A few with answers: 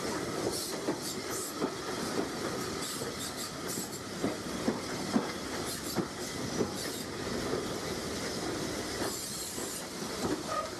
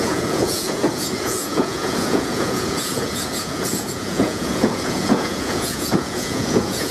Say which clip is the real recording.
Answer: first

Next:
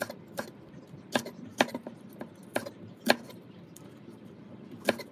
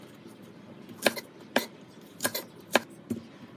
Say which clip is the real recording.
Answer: second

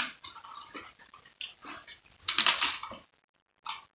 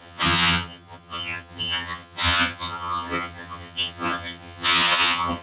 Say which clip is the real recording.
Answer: first